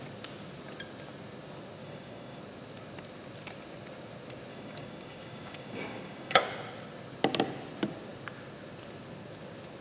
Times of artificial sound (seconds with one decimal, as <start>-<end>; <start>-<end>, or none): 1.8-2.4; 4.5-6.4